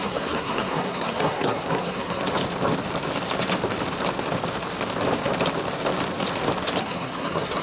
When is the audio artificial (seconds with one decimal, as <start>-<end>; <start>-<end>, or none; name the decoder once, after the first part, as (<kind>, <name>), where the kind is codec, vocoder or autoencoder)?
0.0-2.2 (codec, SNAC); 6.8-7.6